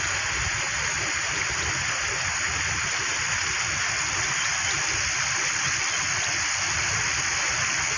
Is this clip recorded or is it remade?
recorded